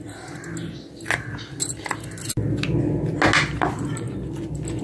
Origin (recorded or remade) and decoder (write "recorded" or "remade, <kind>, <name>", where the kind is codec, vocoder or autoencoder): recorded